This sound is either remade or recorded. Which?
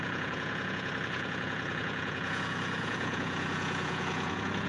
remade